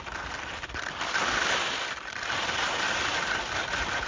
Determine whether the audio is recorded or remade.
recorded